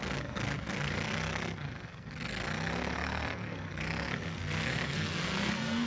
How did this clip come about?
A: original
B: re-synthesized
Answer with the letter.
B